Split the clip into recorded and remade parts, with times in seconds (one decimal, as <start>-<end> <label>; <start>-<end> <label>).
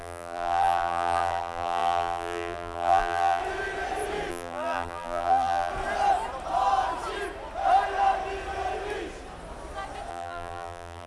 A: 0.0-3.4 remade; 3.4-4.3 recorded; 4.3-5.7 remade; 5.7-10.1 recorded; 10.1-11.1 remade